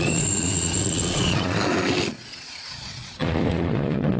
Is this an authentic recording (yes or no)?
no